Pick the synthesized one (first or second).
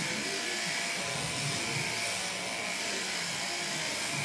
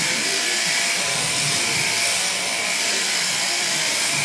second